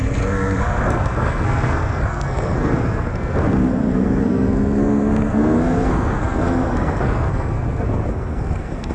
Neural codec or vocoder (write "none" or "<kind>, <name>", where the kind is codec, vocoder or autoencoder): codec, SNAC